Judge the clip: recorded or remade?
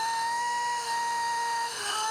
remade